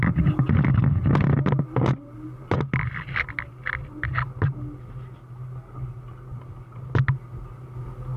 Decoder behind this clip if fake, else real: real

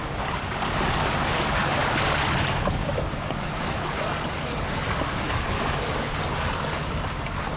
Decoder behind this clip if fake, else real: fake, codec, DAC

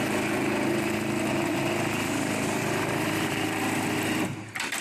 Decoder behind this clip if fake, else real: real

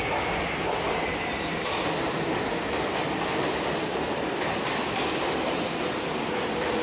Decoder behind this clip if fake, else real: real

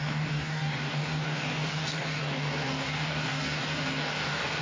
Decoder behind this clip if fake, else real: fake, codec, DAC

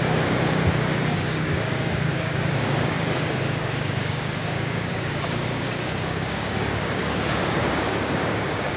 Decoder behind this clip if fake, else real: fake, codec, DAC